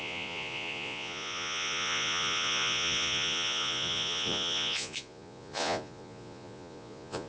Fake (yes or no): yes